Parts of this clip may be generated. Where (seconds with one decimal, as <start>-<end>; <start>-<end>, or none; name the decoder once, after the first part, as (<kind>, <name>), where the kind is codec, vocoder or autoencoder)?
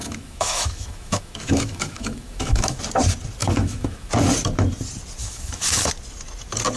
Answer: 0.0-2.8 (autoencoder, DAC-VAE); 3.4-4.1; 5.2-5.9